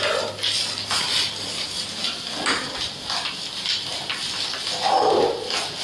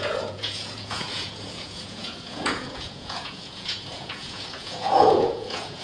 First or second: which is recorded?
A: first